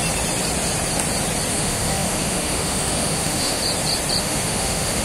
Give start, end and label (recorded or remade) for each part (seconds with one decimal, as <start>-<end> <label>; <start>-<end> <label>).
0.0-1.5 recorded; 1.5-3.6 remade; 3.6-4.2 recorded; 4.2-5.0 remade